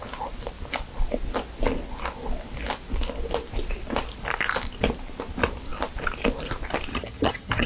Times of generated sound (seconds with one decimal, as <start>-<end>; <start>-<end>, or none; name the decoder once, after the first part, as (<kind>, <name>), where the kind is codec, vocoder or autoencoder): 6.9-7.7 (vocoder, HiFi-GAN)